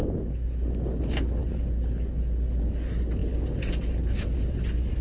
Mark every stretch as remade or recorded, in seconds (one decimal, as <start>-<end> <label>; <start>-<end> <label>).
0.0-5.0 recorded

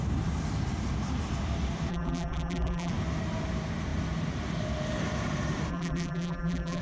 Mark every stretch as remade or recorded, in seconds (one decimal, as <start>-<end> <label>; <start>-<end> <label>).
0.0-1.9 recorded; 1.9-2.9 remade; 2.9-5.7 recorded; 5.7-6.8 remade

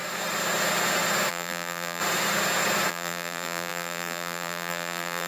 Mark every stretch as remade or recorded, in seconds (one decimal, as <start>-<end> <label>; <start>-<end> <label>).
0.0-1.3 recorded; 1.3-2.0 remade; 2.0-2.9 recorded; 2.9-5.3 remade

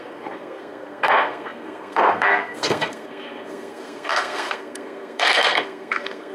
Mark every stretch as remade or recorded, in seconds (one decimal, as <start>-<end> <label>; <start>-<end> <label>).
0.0-6.3 remade

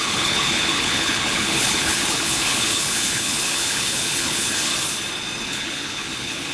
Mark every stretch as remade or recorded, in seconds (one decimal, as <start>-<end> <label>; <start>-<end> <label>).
0.0-4.7 remade; 4.7-5.4 recorded; 5.4-6.5 remade

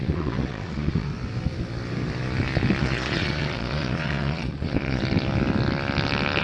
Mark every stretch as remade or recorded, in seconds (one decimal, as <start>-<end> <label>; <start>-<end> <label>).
0.0-1.1 remade; 1.1-2.8 recorded; 2.8-5.0 remade; 5.0-6.4 recorded